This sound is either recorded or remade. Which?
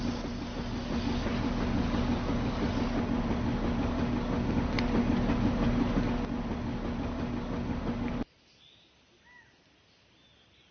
recorded